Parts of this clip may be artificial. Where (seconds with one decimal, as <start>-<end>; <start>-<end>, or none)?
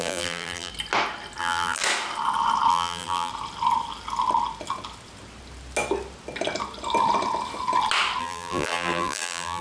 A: 0.0-0.7; 1.4-1.8; 2.7-3.3; 8.2-9.6